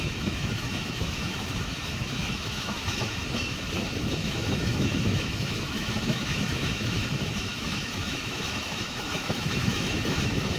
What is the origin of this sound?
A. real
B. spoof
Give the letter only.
B